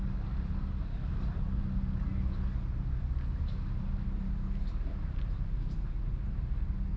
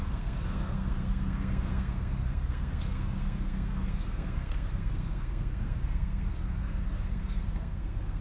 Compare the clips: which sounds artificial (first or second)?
second